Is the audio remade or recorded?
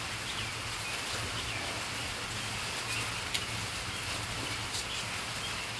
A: recorded